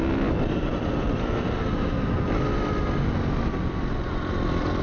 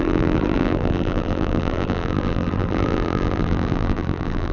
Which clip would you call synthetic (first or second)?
second